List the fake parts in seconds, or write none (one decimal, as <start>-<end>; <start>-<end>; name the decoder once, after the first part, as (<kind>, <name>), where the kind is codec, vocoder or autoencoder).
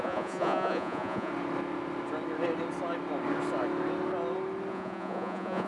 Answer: 0.0-1.3 (vocoder, Vocos); 4.7-5.7